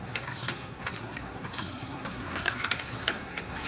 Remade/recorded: remade